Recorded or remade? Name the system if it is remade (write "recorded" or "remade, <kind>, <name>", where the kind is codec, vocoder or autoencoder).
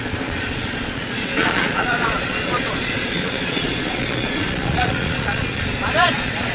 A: remade, vocoder, Vocos